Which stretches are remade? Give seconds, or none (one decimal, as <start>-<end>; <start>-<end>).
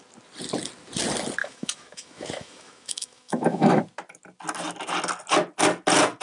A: 1.4-3.8